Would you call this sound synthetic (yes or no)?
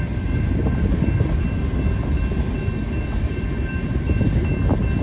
no